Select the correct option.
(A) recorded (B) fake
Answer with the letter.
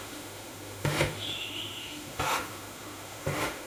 B